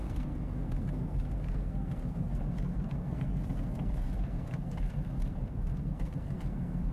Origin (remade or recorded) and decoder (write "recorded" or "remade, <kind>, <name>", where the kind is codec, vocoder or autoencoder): remade, codec, SNAC